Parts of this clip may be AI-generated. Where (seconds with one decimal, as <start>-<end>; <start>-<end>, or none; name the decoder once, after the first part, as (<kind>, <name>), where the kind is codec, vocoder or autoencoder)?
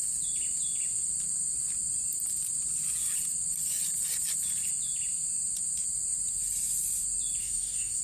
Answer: 7.4-8.0 (codec, DAC)